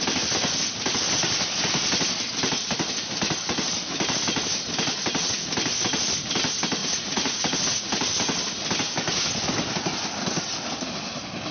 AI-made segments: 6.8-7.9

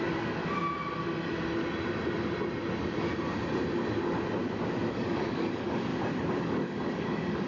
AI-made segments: 0.0-0.4; 4.9-5.9; 6.4-7.5

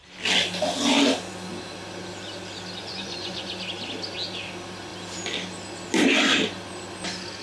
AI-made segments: 2.8-3.5